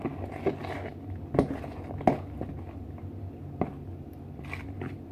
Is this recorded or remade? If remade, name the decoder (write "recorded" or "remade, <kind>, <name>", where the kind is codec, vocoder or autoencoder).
recorded